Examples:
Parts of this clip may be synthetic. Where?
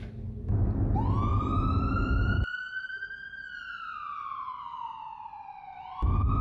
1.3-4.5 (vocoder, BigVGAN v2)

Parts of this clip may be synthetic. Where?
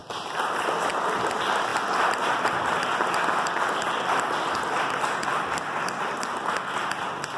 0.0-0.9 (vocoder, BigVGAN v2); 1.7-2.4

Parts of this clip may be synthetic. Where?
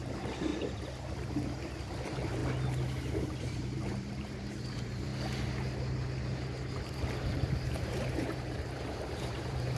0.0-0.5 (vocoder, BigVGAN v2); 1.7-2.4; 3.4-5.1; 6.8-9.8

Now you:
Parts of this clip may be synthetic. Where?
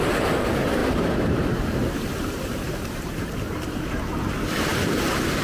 0.8-4.0 (vocoder, BigVGAN v2); 4.7-5.4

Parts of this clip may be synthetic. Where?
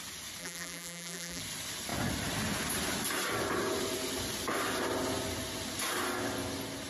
0.4-1.4 (vocoder, BigVGAN v2)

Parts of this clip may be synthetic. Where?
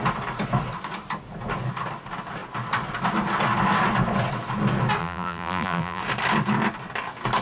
5.0-6.0 (vocoder, BigVGAN v2)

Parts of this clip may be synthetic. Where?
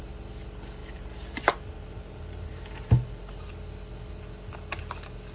0.8-3.5 (vocoder, BigVGAN v2)